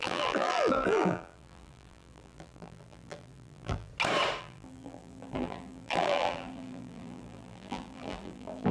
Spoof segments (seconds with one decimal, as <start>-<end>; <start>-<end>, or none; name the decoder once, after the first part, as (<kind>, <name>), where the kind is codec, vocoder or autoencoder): 0.0-3.9 (vocoder, BigVGAN v2); 4.4-8.7